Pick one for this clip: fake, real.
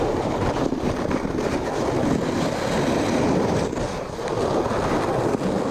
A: real